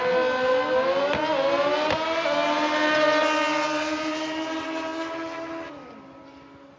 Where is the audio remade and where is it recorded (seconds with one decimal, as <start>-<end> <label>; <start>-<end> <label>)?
0.0-6.8 recorded